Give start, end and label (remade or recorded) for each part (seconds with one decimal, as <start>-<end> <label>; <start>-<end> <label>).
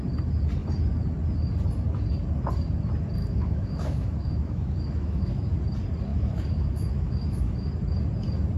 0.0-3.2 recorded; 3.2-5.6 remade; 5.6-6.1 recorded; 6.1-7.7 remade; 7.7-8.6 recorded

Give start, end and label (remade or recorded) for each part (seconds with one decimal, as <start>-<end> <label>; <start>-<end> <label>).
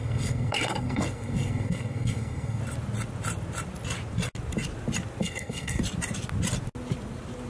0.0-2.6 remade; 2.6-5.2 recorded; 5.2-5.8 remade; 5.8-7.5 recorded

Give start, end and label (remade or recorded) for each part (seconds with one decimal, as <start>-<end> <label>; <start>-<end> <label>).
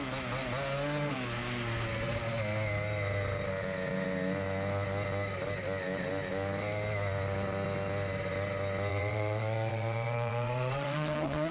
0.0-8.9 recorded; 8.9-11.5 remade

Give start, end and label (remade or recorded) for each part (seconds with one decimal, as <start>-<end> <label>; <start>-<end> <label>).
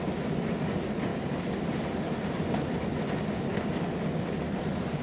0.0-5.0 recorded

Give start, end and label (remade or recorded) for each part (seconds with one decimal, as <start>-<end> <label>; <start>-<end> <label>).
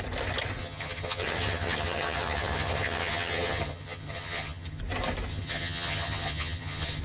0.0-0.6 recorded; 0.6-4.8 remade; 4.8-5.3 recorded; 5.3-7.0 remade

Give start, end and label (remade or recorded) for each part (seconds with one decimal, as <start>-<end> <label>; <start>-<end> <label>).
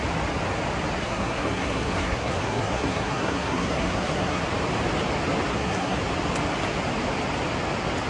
0.0-1.0 recorded; 1.0-4.4 remade; 4.4-5.5 recorded; 5.5-6.0 remade; 6.0-8.1 recorded